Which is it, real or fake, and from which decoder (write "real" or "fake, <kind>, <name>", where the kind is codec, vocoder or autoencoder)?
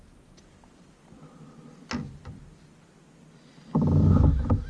real